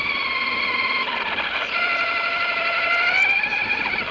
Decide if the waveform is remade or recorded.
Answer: recorded